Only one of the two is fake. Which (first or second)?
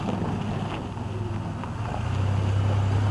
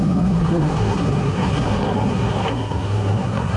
second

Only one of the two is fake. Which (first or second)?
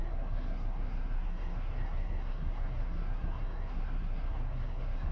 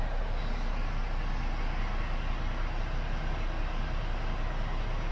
first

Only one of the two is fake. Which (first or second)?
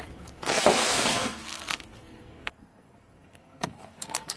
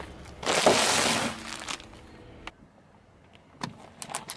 first